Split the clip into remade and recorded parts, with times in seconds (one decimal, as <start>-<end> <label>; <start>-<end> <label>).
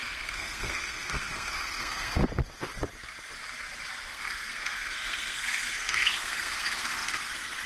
0.0-2.2 remade; 2.2-4.1 recorded; 4.1-7.7 remade